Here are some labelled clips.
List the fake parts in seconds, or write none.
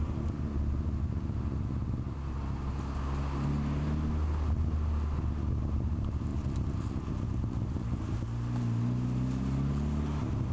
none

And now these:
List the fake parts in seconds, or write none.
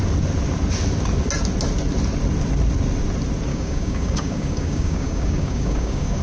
3.5-6.2 (codec, DAC)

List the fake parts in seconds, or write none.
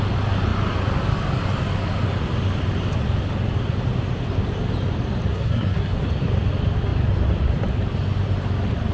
5.3-6.0 (codec, SNAC)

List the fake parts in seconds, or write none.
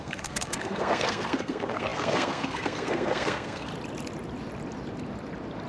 0.0-3.7 (codec, SNAC)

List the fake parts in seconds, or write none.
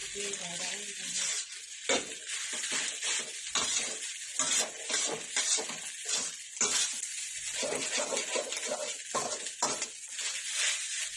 none